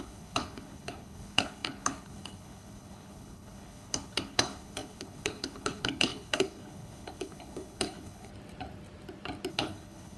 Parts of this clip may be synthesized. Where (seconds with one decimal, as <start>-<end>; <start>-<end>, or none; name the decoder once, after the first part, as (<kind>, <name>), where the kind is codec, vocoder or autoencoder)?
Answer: 0.0-8.3 (codec, HILCodec); 9.5-10.2